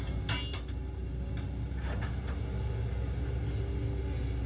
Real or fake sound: real